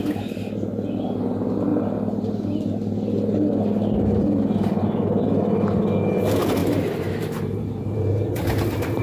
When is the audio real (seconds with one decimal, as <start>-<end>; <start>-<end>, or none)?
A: 0.0-6.6